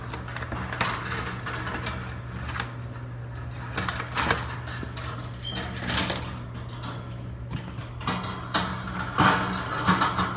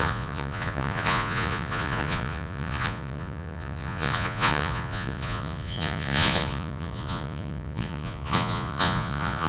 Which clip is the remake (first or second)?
second